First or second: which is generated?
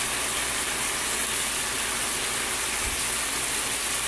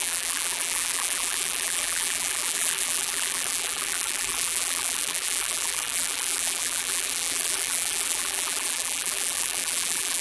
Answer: second